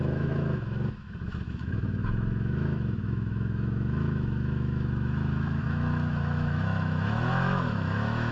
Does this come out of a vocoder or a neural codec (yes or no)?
yes